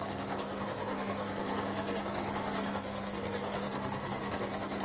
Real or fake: fake